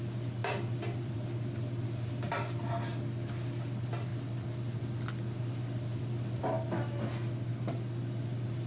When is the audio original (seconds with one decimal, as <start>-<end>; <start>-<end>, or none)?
0.0-0.4; 2.7-5.9; 6.5-8.7